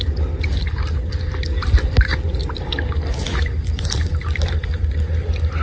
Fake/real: real